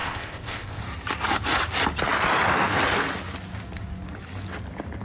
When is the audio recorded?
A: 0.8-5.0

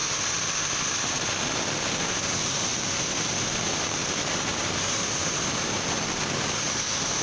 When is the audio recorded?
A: 0.0-4.6; 5.4-7.2

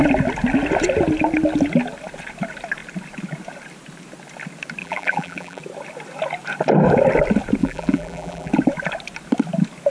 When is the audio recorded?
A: 0.0-4.8; 5.6-7.6; 8.5-9.9